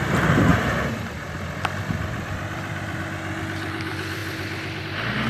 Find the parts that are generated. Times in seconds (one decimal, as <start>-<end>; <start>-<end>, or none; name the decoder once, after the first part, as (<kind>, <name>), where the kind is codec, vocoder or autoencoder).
0.5-3.0 (vocoder, BigVGAN v2)